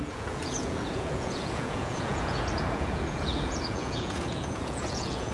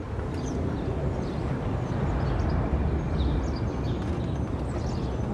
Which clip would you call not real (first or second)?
first